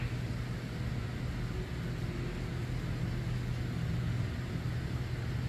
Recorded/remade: recorded